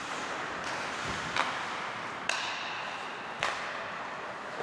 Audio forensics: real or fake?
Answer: real